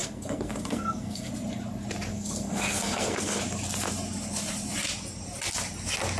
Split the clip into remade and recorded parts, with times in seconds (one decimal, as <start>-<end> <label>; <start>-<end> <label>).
0.0-1.3 remade; 1.3-2.1 recorded; 2.1-3.4 remade; 3.4-6.2 recorded